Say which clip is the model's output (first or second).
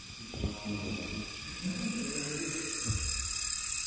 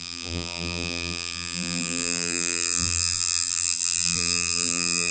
second